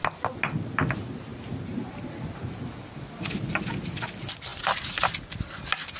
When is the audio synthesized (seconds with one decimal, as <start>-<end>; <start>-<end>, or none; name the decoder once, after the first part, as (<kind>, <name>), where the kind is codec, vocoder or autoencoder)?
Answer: 1.3-2.7 (vocoder, BigVGAN v2)